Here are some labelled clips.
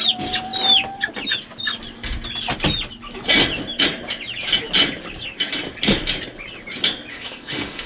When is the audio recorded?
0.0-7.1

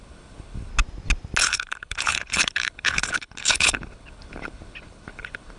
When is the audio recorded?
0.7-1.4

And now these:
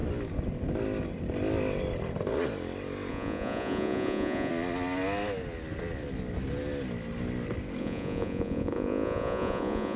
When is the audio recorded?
0.0-3.1; 4.5-7.8

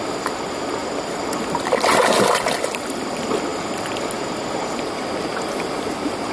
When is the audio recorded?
0.0-6.3

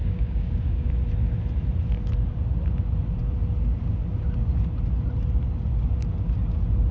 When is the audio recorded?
0.9-6.9

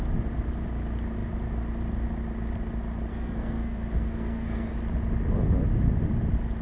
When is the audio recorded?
0.0-3.1; 4.7-6.6

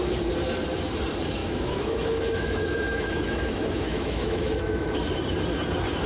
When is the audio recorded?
0.0-1.4; 5.1-6.1